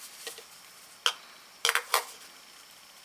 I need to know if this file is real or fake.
real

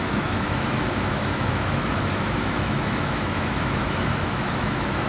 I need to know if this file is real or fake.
fake